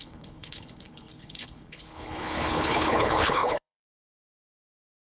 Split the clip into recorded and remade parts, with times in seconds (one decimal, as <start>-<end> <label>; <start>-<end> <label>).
0.0-5.1 remade